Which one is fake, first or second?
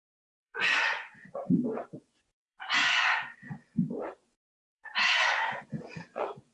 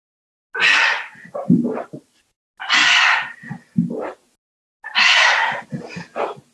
first